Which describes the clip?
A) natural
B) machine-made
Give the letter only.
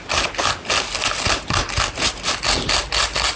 A